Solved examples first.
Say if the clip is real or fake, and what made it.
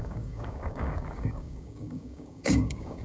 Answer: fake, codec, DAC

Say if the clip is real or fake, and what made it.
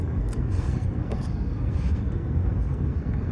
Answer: fake, codec, SNAC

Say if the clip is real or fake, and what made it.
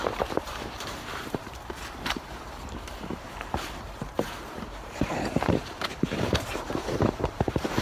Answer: fake, vocoder, BigVGAN v2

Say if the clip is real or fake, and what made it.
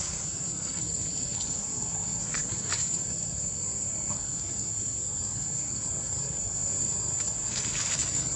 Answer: fake, codec, SNAC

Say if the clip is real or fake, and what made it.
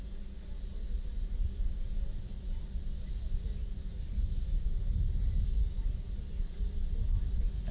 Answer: real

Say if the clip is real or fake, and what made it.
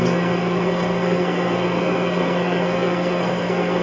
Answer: fake, codec, SNAC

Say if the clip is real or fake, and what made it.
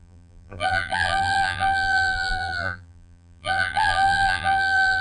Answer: fake, vocoder, BigVGAN v2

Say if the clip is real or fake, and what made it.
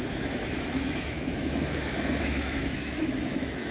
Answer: fake, autoencoder, DAC-VAE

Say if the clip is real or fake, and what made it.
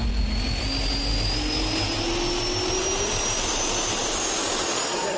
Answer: real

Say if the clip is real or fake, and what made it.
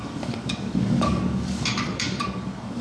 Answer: fake, codec, DAC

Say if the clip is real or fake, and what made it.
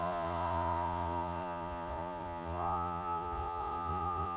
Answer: fake, vocoder, Vocos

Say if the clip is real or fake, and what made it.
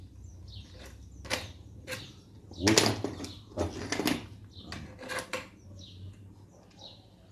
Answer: real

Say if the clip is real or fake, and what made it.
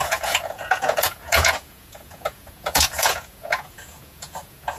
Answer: fake, vocoder, Vocos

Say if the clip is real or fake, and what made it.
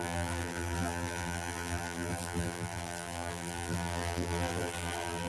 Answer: fake, vocoder, BigVGAN v2